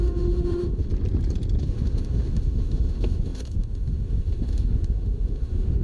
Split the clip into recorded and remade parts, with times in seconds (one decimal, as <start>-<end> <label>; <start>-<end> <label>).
0.0-0.9 remade; 0.9-1.6 recorded; 1.6-5.8 remade